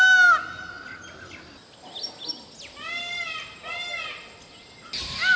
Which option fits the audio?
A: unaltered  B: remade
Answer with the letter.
A